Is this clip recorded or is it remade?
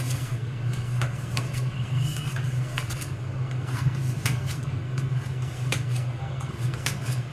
remade